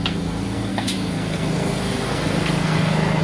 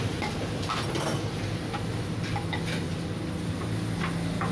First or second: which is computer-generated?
first